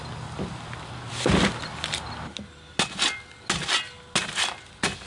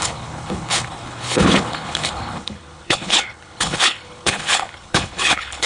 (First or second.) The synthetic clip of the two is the second